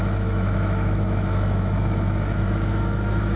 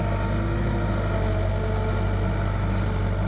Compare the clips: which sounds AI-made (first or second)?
first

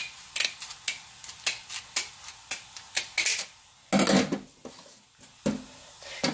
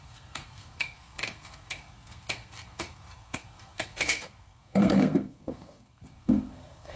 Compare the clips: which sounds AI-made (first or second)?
second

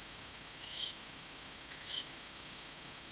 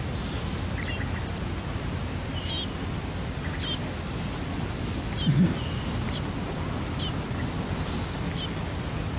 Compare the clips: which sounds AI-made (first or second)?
first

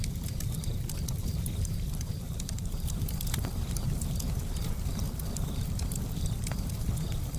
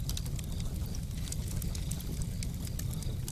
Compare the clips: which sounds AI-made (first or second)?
first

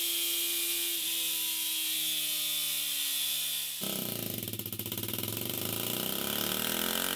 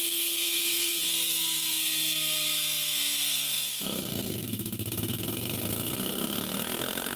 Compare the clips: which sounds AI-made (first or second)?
second